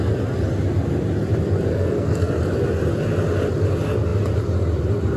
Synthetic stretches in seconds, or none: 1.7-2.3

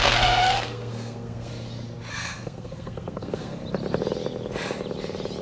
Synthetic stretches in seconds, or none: 0.0-1.5; 2.1-3.6

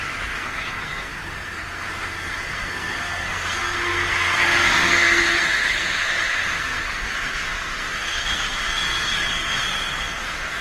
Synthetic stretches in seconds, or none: 0.0-10.6